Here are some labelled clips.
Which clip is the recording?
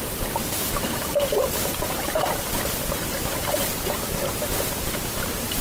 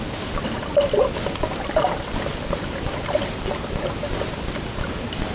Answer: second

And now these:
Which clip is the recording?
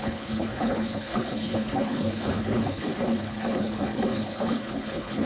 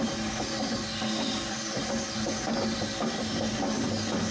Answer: second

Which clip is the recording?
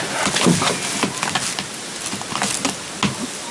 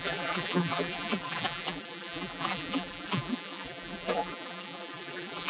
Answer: first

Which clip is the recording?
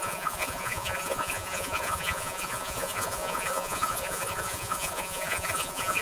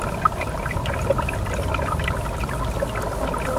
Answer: second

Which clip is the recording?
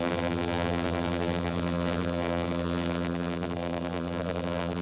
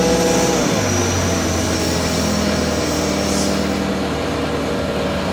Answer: second